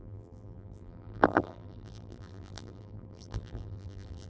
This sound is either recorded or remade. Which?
remade